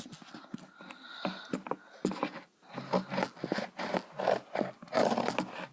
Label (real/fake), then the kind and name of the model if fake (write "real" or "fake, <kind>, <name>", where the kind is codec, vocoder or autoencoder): real